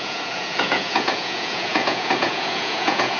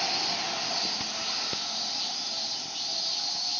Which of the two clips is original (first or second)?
second